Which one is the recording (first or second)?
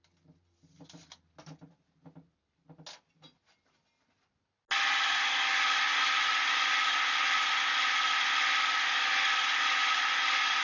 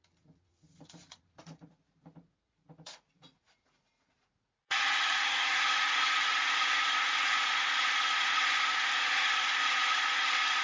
first